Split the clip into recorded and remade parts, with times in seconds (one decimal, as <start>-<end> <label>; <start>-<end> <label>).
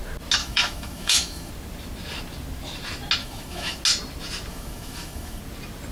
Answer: 0.0-0.4 recorded; 0.4-1.5 remade; 1.5-3.2 recorded; 3.2-3.8 remade; 3.8-4.5 recorded; 4.5-5.4 remade; 5.4-5.9 recorded